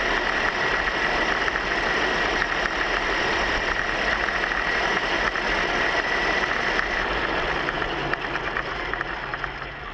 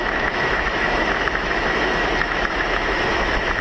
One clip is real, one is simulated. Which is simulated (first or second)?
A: second